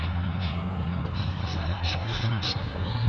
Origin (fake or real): fake